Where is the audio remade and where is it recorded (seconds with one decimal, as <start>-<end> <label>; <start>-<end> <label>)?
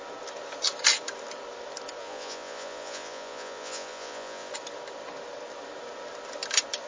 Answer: 0.0-2.0 recorded; 2.0-4.5 remade; 4.5-6.9 recorded